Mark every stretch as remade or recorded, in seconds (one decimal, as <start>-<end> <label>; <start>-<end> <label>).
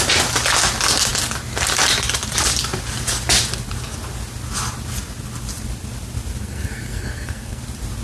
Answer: 0.0-6.4 recorded; 6.4-7.6 remade; 7.6-8.0 recorded